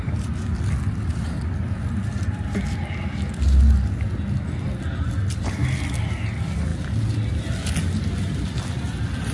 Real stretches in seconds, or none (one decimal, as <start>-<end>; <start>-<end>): 0.0-9.3